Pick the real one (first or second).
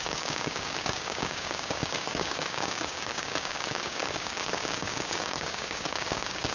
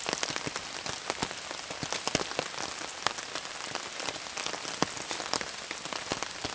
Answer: second